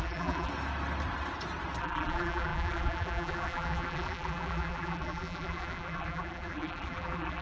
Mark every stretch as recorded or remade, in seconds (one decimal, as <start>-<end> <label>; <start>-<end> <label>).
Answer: 0.0-0.5 remade; 0.5-1.8 recorded; 1.8-7.4 remade